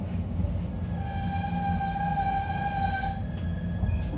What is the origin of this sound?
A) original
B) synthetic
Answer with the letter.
A